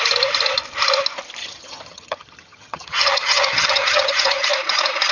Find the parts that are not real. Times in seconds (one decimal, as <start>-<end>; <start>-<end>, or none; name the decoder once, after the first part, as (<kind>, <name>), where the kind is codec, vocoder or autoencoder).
1.4-4.5 (vocoder, HiFi-GAN)